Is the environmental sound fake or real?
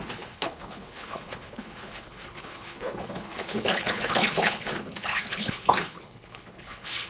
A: fake